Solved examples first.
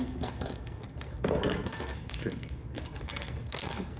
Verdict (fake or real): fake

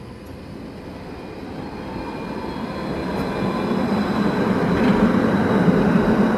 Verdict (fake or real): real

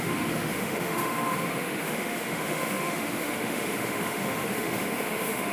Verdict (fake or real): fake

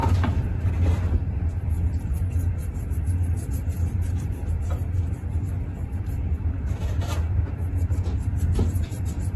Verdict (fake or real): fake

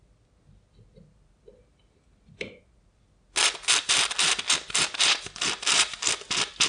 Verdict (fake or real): real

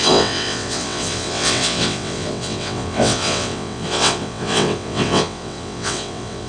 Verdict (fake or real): fake